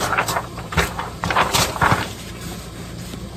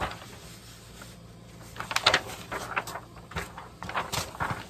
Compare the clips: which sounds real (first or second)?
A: second